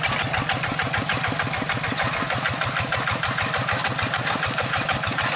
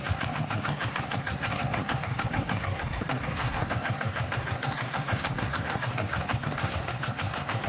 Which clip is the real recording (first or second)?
first